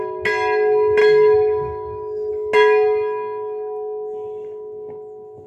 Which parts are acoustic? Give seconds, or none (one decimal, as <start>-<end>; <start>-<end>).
0.0-1.0; 2.3-5.5